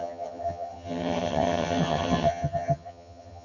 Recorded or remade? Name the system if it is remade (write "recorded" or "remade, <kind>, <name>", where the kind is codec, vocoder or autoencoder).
remade, vocoder, HiFi-GAN